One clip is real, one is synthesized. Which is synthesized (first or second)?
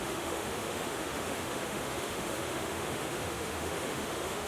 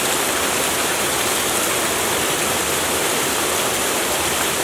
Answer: first